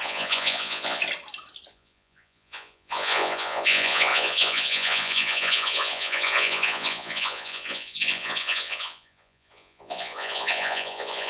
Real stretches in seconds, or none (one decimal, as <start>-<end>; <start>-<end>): 1.0-1.7